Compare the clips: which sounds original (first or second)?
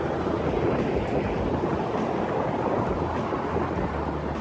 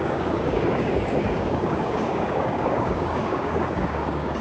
first